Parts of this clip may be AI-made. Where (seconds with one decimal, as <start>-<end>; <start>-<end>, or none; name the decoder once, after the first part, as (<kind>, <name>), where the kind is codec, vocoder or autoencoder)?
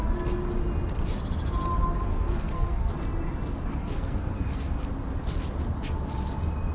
2.1-2.9 (codec, SNAC); 3.7-4.7